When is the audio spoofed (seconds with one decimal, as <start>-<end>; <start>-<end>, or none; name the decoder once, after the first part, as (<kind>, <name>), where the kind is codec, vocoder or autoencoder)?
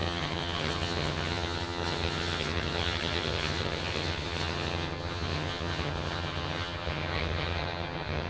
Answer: 0.0-8.3 (vocoder, HiFi-GAN)